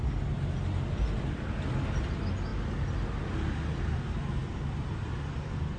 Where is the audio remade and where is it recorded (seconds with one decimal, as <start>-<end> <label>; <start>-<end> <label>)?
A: 0.0-5.8 recorded